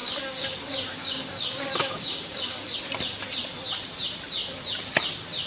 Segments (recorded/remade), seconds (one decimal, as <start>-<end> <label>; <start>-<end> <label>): 0.0-2.8 remade; 2.8-5.5 recorded